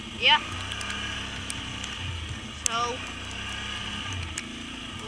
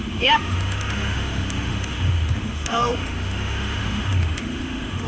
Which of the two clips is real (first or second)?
first